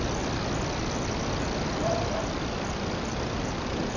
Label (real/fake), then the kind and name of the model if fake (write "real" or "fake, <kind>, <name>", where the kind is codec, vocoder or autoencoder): real